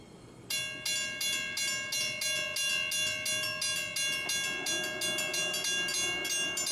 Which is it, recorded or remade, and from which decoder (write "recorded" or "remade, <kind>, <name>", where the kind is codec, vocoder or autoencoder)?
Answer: recorded